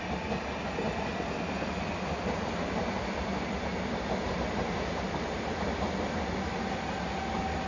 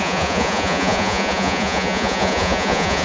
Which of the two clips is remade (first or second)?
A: second